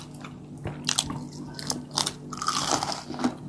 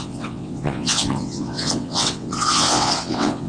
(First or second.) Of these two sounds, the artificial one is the second